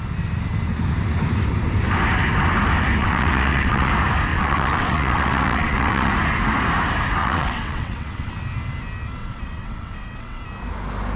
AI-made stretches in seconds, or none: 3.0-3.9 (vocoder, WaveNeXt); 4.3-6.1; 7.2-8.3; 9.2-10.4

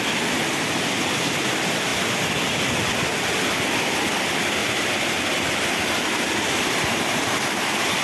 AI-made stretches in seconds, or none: 4.6-7.4 (vocoder, BigVGAN v2)

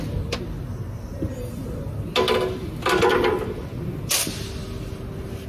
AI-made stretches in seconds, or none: none

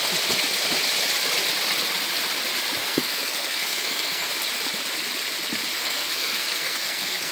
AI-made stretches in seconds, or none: 2.8-4.3 (codec, SNAC); 5.7-7.3

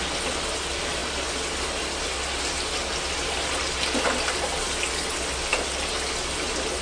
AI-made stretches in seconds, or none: none

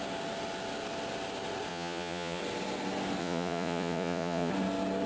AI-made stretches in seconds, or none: 1.7-2.4 (vocoder, Vocos); 3.2-4.5